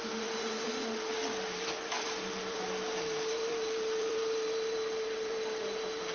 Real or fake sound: fake